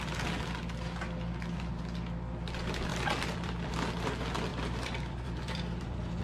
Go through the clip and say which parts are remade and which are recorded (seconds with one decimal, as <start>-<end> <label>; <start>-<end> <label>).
0.0-2.9 recorded; 2.9-3.7 remade; 3.7-4.5 recorded; 4.5-6.2 remade

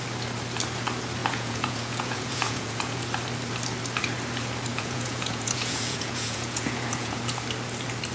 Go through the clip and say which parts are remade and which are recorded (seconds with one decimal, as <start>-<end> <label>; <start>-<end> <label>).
0.0-1.2 recorded; 1.2-3.0 remade; 3.0-4.7 recorded; 4.7-7.2 remade; 7.2-8.1 recorded

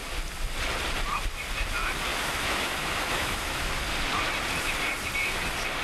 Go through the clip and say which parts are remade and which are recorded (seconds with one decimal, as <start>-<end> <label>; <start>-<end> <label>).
0.0-2.1 recorded; 2.1-3.7 remade; 3.7-5.8 recorded

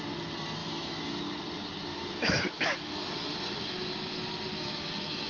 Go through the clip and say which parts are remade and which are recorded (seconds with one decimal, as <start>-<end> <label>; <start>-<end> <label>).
0.0-0.6 recorded; 0.6-1.4 remade; 1.4-1.9 recorded; 1.9-3.1 remade; 3.1-4.5 recorded; 4.5-5.3 remade